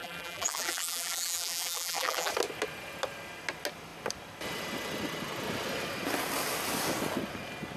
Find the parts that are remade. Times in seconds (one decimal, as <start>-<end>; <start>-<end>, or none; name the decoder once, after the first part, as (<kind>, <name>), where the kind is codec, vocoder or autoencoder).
0.0-2.3 (vocoder, BigVGAN v2)